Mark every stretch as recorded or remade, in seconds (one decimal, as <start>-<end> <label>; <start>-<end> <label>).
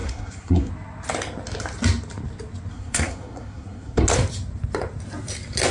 0.0-0.7 remade; 0.7-2.7 recorded; 2.7-4.0 remade; 4.0-5.7 recorded